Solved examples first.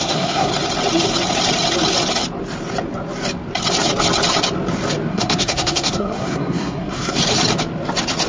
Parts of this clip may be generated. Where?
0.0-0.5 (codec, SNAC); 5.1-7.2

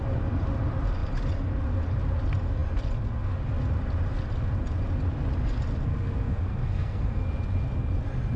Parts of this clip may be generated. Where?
5.8-7.2 (codec, SNAC)

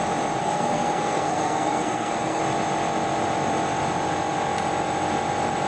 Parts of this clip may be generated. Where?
0.4-2.4 (codec, SNAC)

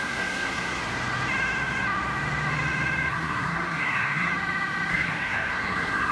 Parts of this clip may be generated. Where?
0.0-0.8 (codec, SNAC); 3.1-4.3; 4.9-6.1

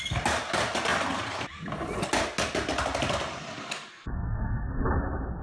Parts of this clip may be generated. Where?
3.9-4.7 (codec, SNAC)

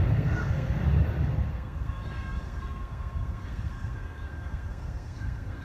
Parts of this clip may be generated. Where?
0.0-0.8 (codec, SNAC); 1.5-5.6